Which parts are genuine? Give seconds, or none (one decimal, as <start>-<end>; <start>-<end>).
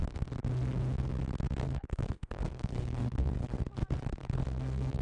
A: 0.0-1.6; 3.6-4.2